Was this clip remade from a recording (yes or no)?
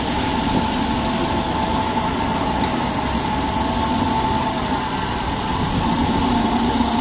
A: no